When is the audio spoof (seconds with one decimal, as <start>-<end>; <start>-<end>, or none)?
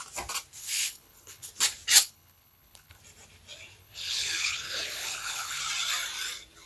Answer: 0.6-1.5; 2.0-3.0; 3.8-5.6